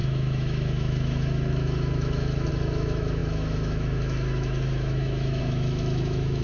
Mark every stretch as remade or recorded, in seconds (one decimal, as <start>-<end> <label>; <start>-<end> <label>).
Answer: 0.0-6.4 remade